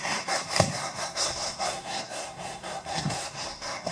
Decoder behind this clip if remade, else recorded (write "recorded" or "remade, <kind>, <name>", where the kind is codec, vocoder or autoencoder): remade, codec, SNAC